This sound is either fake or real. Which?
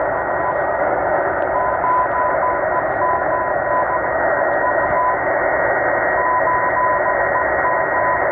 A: real